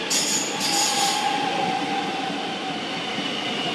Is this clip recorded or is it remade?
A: recorded